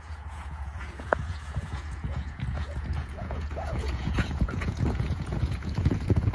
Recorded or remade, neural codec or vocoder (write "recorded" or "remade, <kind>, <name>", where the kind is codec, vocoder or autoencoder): remade, vocoder, Vocos